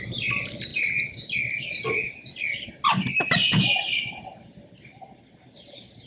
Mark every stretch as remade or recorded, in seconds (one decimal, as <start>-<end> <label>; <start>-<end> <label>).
0.0-6.1 recorded